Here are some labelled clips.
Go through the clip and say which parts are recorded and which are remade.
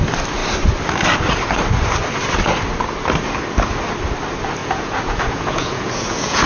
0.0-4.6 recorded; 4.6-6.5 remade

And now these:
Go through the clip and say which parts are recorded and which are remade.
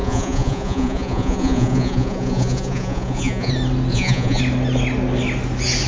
0.0-3.5 remade; 3.5-3.9 recorded; 3.9-4.4 remade; 4.4-5.9 recorded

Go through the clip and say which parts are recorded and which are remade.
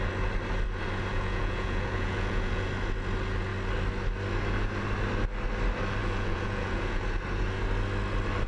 0.0-1.1 recorded; 1.1-2.7 remade; 2.7-6.0 recorded; 6.0-7.0 remade; 7.0-8.5 recorded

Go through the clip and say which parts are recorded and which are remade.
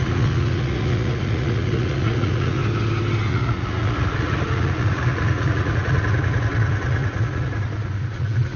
0.0-2.6 remade; 2.6-3.3 recorded; 3.3-8.6 remade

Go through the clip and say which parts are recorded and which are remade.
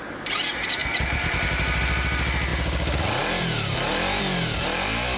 0.0-5.2 recorded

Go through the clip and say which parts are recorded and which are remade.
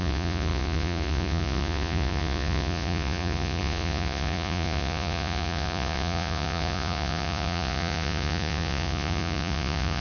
0.0-10.0 remade